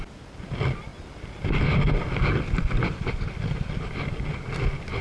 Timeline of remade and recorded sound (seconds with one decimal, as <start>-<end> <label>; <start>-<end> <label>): 0.0-5.0 recorded